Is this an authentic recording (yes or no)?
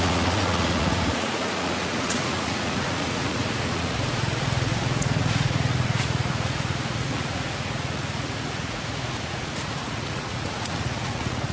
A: no